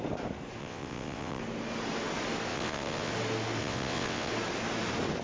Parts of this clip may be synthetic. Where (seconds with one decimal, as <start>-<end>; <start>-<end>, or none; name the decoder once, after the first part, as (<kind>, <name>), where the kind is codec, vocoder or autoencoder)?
0.6-1.4 (vocoder, WaveNeXt); 2.5-3.1; 3.6-4.3